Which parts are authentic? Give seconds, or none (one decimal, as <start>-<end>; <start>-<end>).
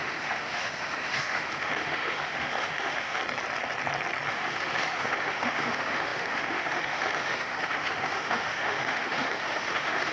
3.2-4.3